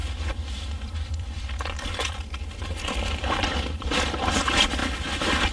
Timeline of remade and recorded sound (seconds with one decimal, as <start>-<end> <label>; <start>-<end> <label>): 0.0-0.5 recorded; 0.5-4.8 remade; 4.8-5.5 recorded